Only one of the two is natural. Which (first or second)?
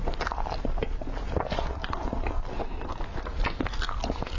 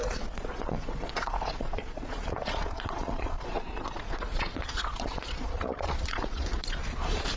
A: first